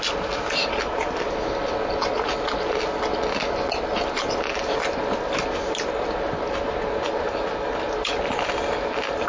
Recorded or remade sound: recorded